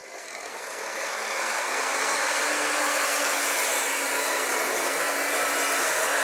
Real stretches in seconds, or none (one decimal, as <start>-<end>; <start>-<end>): 5.3-5.8